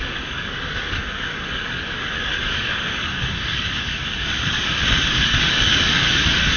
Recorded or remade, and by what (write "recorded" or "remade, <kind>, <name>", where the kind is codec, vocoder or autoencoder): remade, codec, DAC